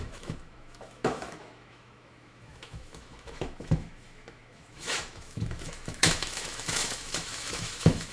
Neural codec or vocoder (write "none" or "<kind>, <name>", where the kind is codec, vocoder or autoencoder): autoencoder, DAC-VAE